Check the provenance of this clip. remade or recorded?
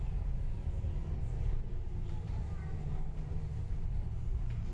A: remade